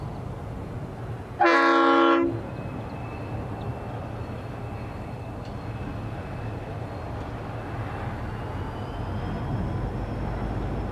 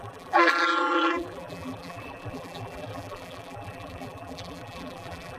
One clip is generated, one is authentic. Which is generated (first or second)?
second